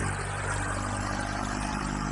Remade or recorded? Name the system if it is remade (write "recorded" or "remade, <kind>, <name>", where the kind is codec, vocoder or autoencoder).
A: remade, vocoder, BigVGAN v2